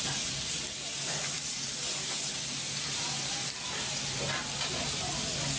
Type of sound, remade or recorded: recorded